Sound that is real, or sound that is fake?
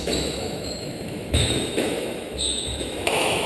fake